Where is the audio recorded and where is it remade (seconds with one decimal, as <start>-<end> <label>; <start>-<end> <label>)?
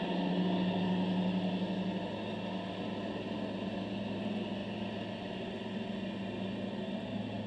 0.0-7.5 recorded